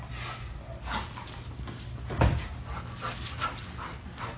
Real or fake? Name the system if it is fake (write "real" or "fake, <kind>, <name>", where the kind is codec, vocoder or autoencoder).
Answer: real